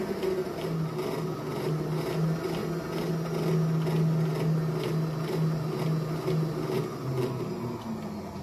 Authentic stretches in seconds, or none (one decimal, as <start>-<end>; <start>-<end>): 0.0-8.4